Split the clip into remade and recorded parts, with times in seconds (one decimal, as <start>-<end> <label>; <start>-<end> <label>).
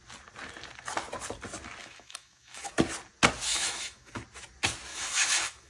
0.0-1.8 recorded; 1.8-2.7 remade; 2.7-3.5 recorded; 3.5-4.1 remade; 4.1-4.9 recorded; 4.9-5.7 remade